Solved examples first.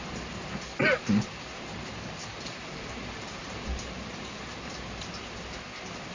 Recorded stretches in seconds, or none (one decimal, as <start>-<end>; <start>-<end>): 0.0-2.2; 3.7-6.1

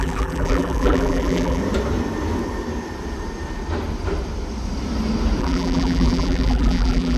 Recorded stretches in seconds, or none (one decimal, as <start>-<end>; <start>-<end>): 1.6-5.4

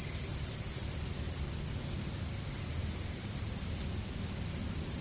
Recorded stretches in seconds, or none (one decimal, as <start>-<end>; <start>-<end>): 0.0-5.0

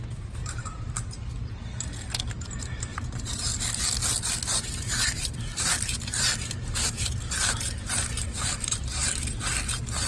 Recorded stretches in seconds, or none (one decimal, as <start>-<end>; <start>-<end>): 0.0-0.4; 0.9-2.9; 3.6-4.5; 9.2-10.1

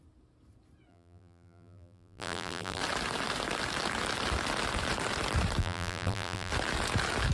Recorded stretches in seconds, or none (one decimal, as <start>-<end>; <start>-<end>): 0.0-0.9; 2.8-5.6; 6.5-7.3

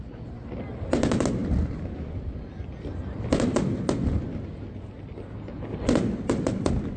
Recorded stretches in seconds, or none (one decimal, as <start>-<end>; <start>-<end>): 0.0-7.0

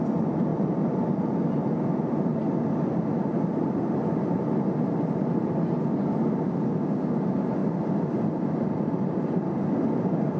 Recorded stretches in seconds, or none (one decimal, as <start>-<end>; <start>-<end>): 0.0-0.5; 1.1-2.3; 2.9-7.6

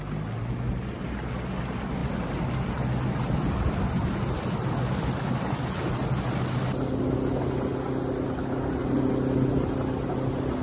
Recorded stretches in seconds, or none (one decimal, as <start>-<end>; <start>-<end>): 0.0-10.6